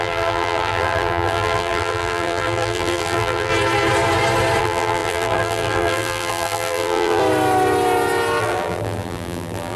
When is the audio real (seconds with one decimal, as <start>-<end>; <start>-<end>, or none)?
3.5-4.6; 7.2-8.4